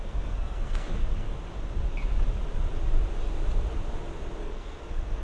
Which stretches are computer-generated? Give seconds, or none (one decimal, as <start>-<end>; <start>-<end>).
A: 0.0-1.3; 4.4-5.2